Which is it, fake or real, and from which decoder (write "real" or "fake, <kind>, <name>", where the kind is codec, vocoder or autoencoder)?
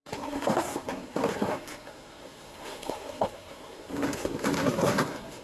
fake, codec, SNAC